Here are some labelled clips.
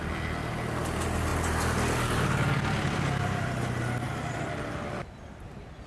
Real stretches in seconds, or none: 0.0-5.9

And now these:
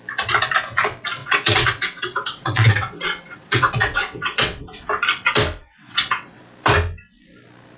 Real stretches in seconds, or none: 0.0-1.2; 4.9-5.6; 6.4-7.8

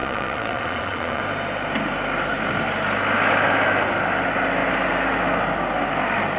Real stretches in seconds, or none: 1.2-6.4